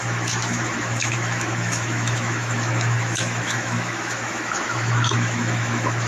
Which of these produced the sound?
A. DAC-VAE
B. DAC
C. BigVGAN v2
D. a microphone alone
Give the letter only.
A